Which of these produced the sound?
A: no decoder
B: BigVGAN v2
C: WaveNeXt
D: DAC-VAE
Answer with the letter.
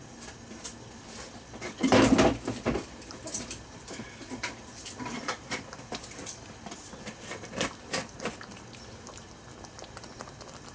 B